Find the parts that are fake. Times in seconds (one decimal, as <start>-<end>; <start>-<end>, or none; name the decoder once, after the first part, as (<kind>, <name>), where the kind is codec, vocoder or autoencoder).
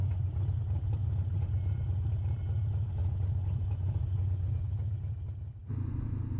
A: 0.0-0.6 (vocoder, Vocos); 1.0-2.0; 3.0-4.7; 5.6-6.4